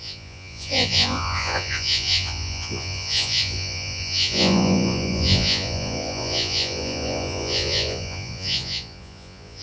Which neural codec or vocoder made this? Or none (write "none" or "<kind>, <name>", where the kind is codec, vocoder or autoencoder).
vocoder, Vocos